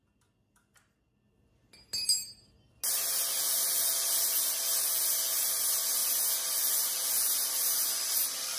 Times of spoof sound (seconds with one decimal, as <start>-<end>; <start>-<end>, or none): none

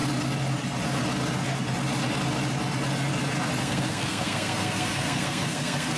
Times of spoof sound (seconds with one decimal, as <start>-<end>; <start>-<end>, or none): 3.6-6.0

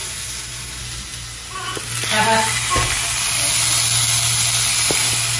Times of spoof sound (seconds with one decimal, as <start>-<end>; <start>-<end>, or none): 0.0-0.8

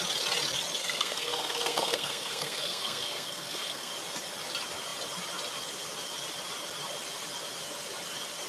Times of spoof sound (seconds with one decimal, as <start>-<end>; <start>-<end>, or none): 0.8-3.9

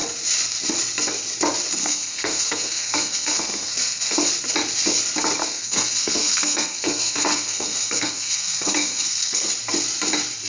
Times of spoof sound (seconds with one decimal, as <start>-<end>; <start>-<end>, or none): 1.8-4.3; 5.4-9.5

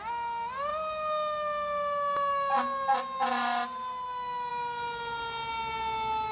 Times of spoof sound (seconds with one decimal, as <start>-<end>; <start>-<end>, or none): none